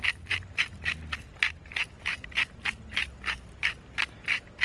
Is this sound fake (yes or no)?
no